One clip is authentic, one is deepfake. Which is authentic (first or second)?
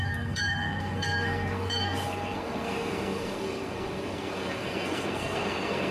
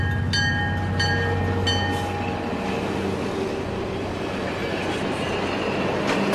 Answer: second